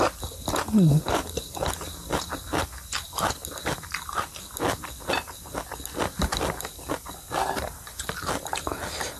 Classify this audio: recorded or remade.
recorded